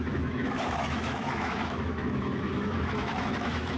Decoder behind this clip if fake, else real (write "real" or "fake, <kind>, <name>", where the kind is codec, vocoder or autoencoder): fake, autoencoder, DAC-VAE